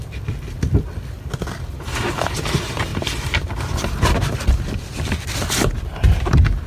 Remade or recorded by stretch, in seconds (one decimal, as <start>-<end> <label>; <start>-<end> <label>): 0.0-6.7 recorded